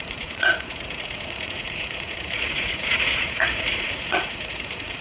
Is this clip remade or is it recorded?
remade